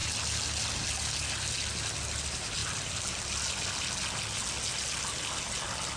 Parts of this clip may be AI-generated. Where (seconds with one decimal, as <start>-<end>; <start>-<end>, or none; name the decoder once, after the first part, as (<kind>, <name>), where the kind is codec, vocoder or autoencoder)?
none